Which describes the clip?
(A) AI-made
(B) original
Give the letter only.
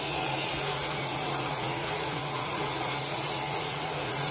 A